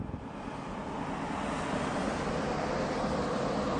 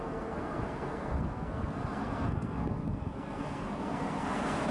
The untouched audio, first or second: first